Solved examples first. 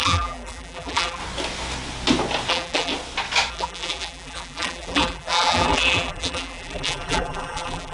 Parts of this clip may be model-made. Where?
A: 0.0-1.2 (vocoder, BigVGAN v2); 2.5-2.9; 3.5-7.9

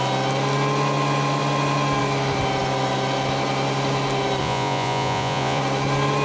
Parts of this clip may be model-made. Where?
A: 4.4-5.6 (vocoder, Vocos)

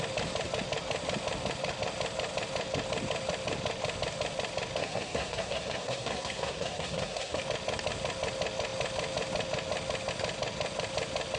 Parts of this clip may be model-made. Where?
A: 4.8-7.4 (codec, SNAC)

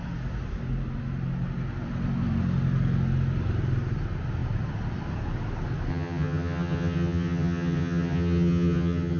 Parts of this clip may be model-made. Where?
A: 5.9-9.2 (vocoder, HiFi-GAN)